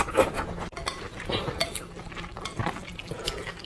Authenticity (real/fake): real